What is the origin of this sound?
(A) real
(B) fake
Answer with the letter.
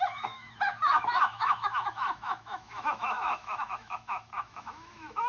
B